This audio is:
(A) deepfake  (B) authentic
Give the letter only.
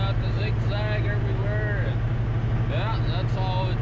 B